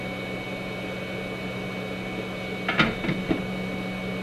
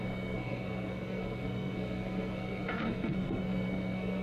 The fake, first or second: second